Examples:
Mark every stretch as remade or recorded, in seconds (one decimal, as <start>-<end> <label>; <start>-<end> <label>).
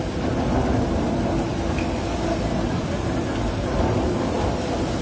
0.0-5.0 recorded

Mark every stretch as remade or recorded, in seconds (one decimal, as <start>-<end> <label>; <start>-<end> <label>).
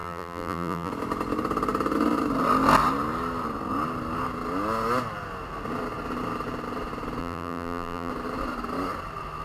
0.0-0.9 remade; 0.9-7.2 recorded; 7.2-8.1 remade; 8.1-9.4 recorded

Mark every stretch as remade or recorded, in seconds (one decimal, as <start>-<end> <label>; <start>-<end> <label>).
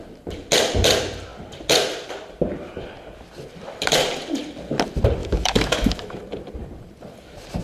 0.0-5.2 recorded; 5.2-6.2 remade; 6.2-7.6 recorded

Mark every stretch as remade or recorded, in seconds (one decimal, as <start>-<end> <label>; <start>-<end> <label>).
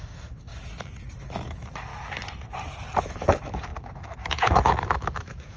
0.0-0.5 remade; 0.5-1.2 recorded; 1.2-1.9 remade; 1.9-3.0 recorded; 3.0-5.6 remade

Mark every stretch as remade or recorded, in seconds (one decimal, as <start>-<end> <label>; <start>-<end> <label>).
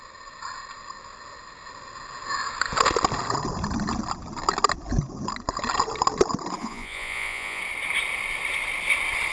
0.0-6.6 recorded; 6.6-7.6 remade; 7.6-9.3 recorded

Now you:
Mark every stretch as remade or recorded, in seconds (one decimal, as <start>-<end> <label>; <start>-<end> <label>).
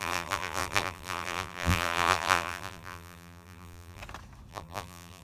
0.0-4.0 remade; 4.0-4.5 recorded; 4.5-5.2 remade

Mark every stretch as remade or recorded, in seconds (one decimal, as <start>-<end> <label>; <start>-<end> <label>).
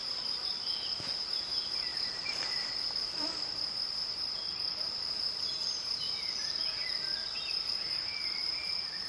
0.0-1.9 remade; 1.9-2.9 recorded; 2.9-6.8 remade; 6.8-7.5 recorded; 7.5-9.1 remade